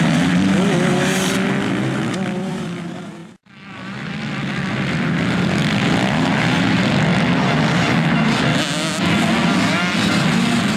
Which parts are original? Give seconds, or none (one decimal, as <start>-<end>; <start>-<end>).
0.0-10.8

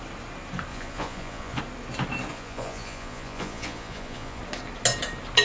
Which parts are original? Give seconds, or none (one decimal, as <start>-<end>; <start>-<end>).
0.0-0.7; 1.6-2.3; 4.4-5.4

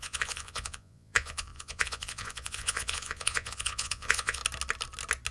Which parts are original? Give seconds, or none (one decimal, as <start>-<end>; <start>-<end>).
4.4-5.3

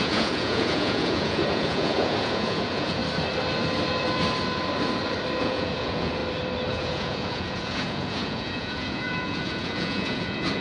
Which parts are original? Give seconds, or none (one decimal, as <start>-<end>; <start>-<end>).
3.0-5.4; 6.2-6.7

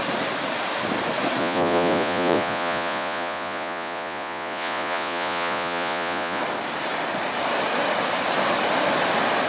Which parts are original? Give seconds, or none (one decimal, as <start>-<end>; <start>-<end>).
0.0-1.4; 6.4-9.5